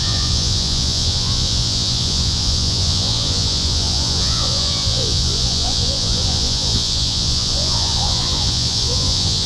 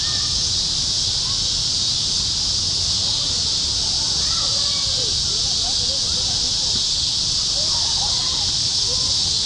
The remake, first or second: first